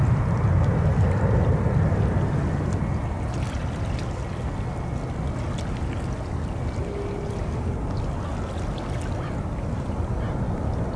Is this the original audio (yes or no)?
yes